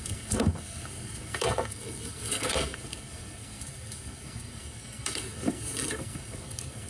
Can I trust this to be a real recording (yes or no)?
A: no